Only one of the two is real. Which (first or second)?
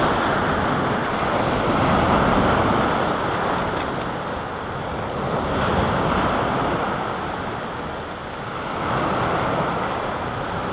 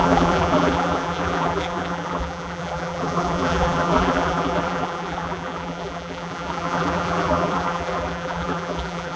first